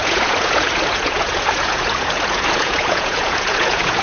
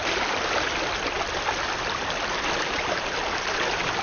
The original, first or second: second